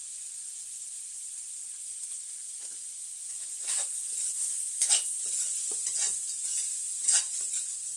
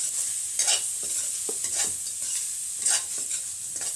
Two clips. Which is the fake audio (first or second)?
first